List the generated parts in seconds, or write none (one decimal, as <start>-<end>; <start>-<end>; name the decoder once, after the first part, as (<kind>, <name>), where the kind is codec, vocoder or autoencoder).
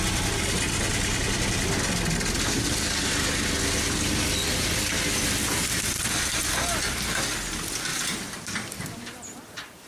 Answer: 7.9-9.9 (vocoder, BigVGAN v2)